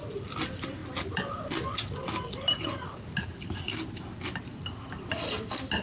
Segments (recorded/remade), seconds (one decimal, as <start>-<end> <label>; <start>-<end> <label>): 0.0-5.8 recorded